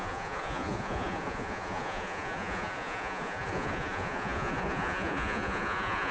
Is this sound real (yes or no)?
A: no